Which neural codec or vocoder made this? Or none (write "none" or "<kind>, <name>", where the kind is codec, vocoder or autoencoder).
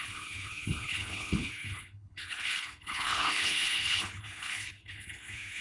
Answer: codec, HILCodec